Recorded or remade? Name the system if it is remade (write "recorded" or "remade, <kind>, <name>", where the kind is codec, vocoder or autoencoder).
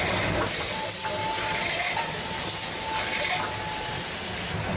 recorded